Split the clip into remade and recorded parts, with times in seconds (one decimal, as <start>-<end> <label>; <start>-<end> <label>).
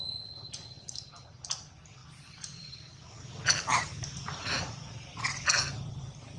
0.0-2.0 recorded; 2.0-4.4 remade; 4.4-6.4 recorded